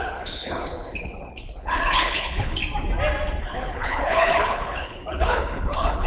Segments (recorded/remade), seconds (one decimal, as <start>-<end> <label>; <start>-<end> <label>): 0.0-2.6 remade; 2.6-3.4 recorded; 3.4-6.1 remade